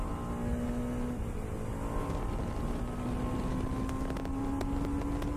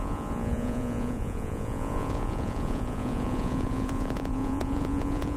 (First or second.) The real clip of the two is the first